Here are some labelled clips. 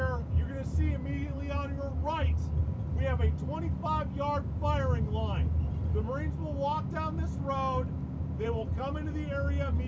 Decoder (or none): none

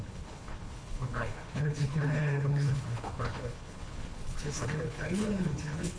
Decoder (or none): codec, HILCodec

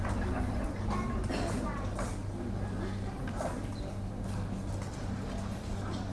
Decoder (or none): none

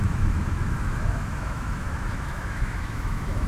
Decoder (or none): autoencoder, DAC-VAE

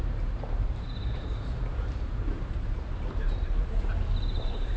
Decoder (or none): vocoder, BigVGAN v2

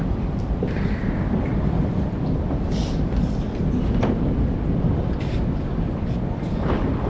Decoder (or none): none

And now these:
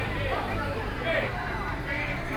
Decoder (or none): vocoder, BigVGAN v2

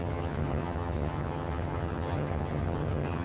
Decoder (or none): vocoder, HiFi-GAN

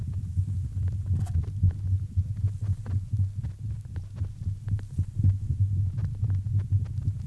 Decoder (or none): none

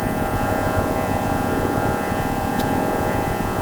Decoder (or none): vocoder, Vocos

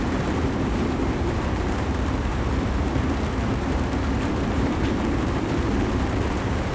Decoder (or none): vocoder, BigVGAN v2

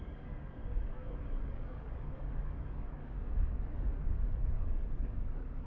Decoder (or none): codec, DAC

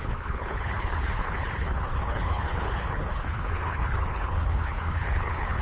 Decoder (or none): codec, HILCodec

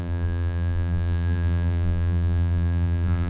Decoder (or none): vocoder, BigVGAN v2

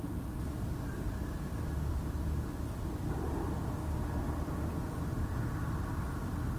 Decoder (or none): none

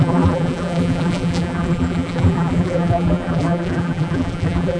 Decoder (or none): vocoder, BigVGAN v2